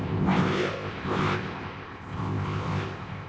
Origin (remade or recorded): remade